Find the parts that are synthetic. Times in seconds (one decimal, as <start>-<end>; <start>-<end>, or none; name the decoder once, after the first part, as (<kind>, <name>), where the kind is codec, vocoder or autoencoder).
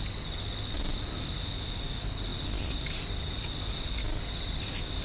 none